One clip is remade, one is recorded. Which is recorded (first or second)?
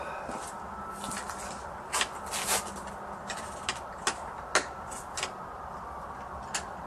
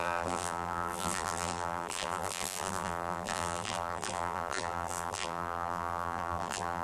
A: first